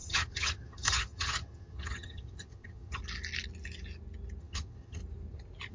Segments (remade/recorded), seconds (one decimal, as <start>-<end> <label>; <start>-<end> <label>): 0.0-3.0 remade; 3.0-4.4 recorded; 4.4-5.0 remade; 5.0-5.7 recorded